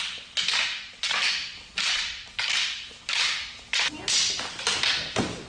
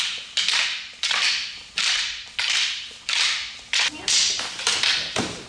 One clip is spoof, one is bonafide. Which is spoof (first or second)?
second